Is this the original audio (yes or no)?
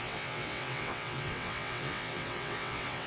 no